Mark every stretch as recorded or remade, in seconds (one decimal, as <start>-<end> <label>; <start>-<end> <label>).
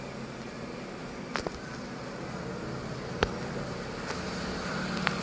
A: 0.0-5.2 recorded